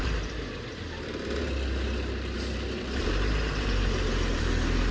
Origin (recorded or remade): remade